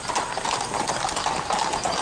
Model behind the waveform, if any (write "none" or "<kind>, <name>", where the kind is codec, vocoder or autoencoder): none